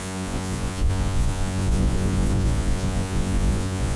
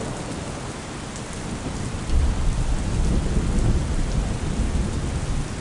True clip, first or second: second